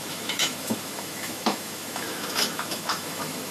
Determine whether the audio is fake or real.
fake